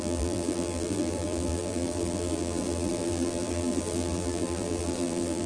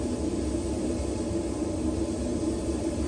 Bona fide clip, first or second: second